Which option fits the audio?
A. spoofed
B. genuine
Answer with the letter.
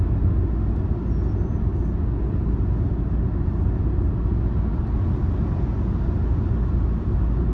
B